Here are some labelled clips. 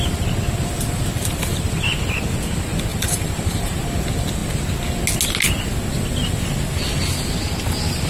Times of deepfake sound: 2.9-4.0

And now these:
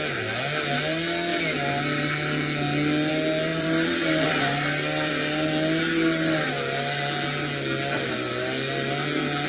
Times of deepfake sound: 3.5-5.1

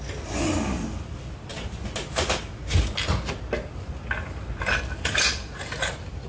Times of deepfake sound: none

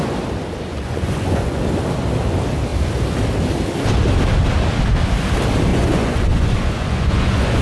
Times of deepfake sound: 0.7-1.6; 5.7-7.6